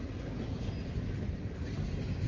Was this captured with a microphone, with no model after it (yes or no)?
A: yes